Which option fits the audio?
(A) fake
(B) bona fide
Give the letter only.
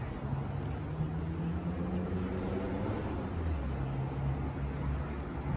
B